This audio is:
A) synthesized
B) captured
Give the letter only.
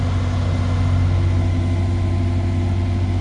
B